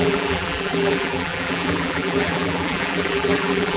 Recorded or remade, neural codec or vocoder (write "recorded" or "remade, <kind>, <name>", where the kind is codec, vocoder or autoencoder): remade, vocoder, BigVGAN v2